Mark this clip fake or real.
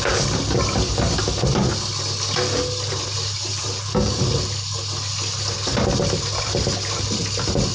real